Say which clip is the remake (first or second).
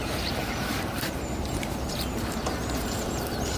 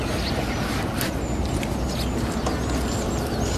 first